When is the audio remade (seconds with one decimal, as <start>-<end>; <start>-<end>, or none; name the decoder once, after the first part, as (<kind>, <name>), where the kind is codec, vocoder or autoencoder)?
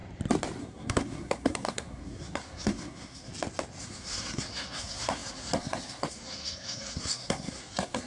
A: 0.6-3.3 (codec, SNAC); 3.8-8.1